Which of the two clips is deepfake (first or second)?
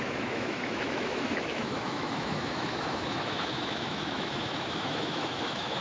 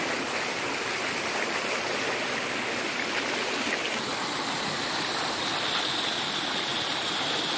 first